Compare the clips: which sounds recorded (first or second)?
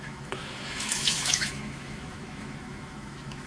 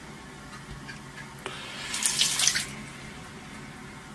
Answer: second